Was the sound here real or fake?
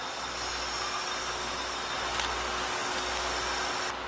real